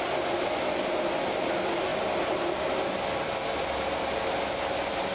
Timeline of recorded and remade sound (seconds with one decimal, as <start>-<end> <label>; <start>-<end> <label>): 0.0-5.1 recorded